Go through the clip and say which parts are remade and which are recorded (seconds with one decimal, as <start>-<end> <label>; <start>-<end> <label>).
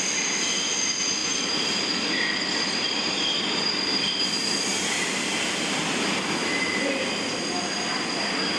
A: 0.0-8.6 recorded